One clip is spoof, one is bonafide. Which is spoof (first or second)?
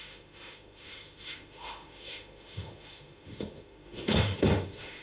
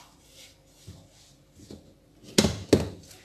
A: first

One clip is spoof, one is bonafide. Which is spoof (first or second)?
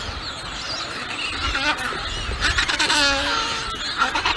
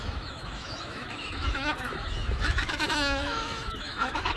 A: second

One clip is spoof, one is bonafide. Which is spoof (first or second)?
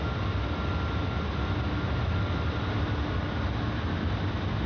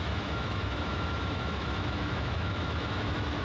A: second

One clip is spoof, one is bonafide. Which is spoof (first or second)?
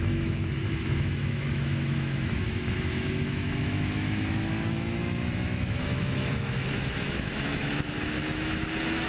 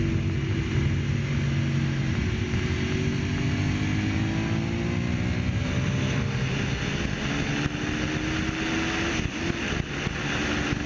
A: first